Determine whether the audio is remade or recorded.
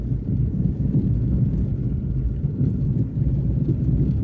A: recorded